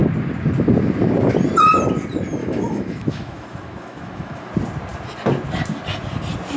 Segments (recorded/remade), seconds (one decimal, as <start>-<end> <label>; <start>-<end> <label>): 0.0-2.4 recorded; 2.4-4.5 remade; 4.5-6.6 recorded